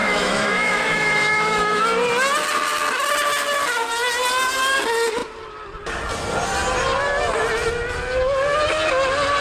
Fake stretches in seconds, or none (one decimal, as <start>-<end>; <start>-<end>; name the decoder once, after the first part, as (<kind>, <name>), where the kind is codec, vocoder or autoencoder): 0.0-1.8 (autoencoder, DAC-VAE)